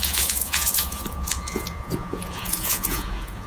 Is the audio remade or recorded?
remade